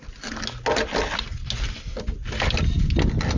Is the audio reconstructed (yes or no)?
no